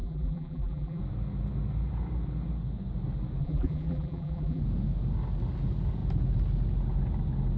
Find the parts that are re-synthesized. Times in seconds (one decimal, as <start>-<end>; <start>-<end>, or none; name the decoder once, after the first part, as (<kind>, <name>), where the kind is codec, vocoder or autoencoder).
0.0-1.0 (vocoder, BigVGAN v2); 3.4-4.6